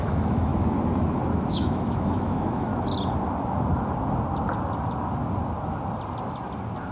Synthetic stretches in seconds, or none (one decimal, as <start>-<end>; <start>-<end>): 0.0-0.5; 1.5-2.7

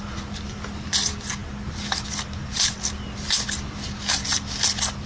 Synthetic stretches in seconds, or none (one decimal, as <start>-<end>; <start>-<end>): none